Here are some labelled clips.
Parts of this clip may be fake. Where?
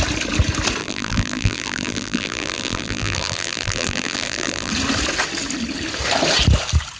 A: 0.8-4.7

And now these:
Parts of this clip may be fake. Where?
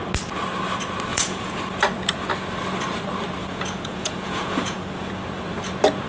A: 1.1-1.6; 3.4-5.1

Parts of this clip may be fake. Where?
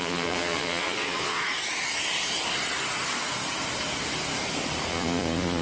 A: 0.0-1.5; 4.9-5.6